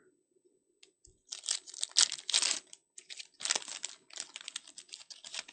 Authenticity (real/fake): real